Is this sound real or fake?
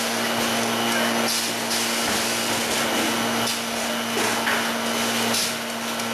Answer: real